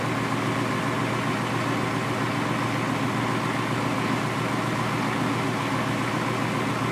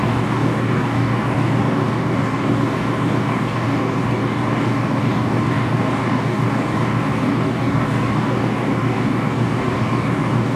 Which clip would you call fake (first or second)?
second